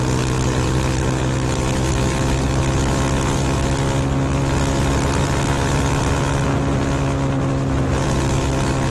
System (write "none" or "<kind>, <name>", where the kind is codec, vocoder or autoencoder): none